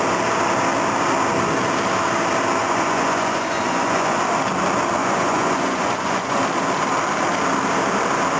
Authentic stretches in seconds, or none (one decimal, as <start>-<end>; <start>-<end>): 0.0-2.6; 4.2-5.0; 6.4-8.4